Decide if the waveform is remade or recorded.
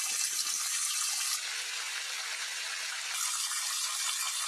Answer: recorded